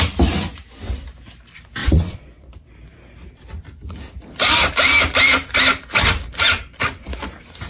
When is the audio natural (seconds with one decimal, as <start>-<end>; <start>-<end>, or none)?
0.0-1.8; 2.5-7.7